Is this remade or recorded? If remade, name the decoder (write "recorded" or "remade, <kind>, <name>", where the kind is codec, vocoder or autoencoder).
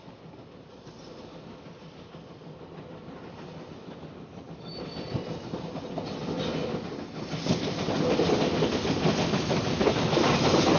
recorded